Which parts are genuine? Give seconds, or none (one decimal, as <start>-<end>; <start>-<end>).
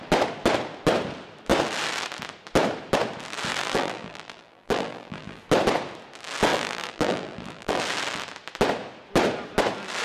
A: 0.0-3.5; 5.4-6.5; 7.8-10.0